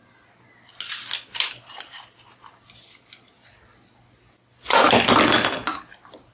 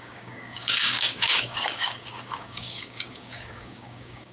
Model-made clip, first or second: second